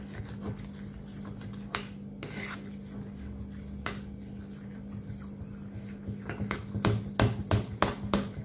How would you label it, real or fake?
real